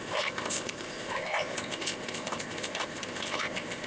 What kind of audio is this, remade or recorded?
remade